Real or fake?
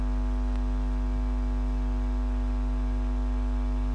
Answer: real